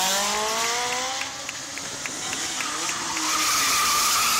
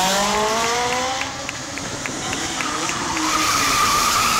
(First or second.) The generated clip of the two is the second